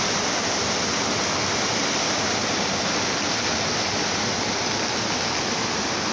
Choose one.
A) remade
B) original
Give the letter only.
B